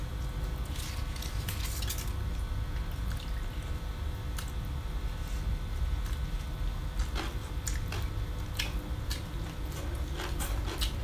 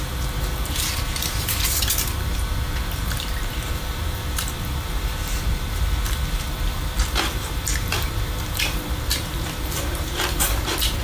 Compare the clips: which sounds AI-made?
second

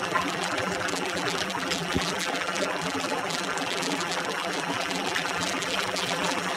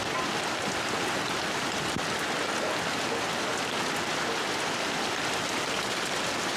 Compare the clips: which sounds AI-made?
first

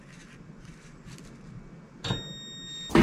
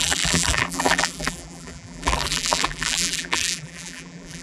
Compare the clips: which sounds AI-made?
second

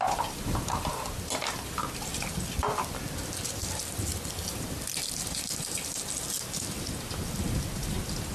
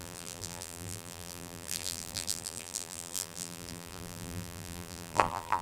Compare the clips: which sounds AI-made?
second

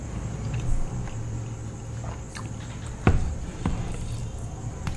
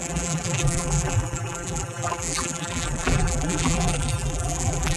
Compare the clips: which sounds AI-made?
second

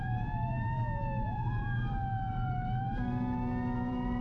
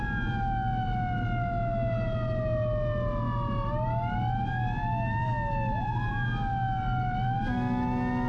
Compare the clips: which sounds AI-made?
first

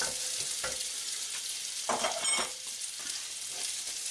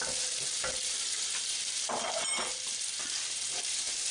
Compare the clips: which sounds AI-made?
second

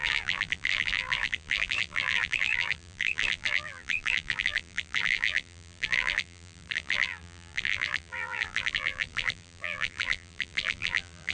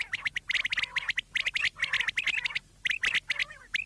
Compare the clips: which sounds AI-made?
first